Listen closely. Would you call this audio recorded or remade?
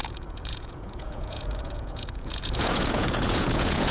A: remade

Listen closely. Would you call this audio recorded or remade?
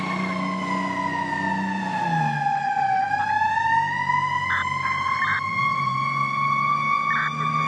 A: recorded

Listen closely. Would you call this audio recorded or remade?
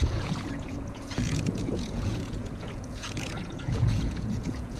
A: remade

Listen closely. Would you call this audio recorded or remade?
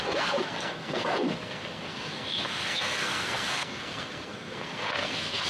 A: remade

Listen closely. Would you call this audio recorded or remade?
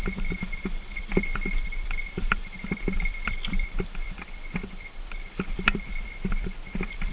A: remade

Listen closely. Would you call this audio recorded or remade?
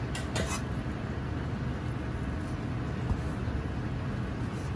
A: recorded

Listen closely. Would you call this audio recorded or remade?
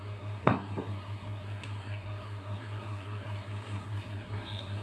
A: remade